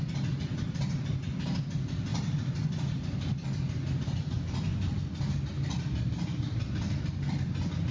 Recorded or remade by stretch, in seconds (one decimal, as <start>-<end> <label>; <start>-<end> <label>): 0.0-7.9 recorded